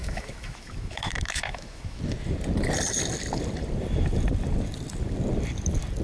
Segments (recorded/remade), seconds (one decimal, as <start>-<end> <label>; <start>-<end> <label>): 0.0-2.0 remade; 2.0-6.0 recorded